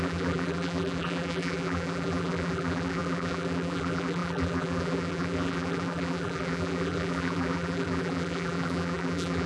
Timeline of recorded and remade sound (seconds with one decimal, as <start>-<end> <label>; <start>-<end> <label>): 0.0-9.5 remade